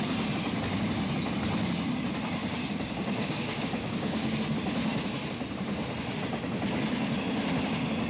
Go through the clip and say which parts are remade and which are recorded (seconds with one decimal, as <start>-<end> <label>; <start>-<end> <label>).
0.0-2.4 recorded; 2.4-4.4 remade; 4.4-8.1 recorded